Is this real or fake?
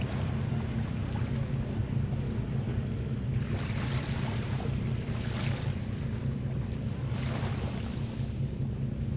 real